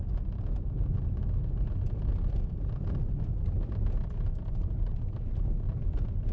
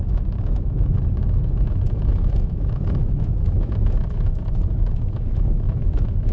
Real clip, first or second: first